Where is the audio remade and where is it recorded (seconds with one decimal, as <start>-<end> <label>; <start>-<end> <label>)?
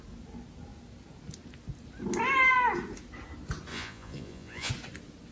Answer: 0.0-3.7 recorded; 3.7-4.7 remade; 4.7-5.3 recorded